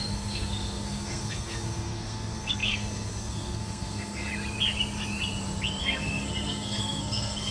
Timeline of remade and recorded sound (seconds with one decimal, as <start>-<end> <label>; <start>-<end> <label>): 0.0-4.3 remade; 4.3-5.8 recorded; 5.8-7.5 remade